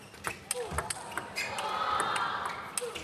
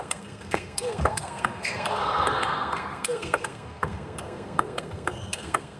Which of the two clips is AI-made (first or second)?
second